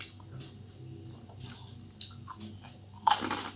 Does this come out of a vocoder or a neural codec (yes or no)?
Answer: no